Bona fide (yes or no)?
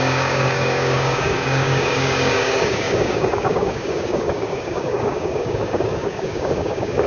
no